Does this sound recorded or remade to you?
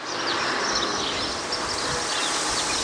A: recorded